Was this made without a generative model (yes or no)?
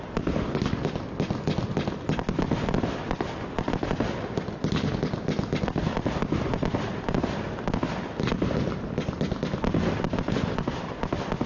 yes